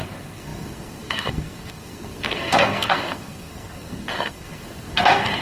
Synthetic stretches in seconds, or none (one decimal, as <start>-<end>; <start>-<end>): 0.0-5.4